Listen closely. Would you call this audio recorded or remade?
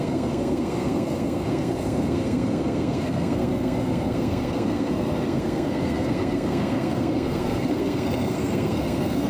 remade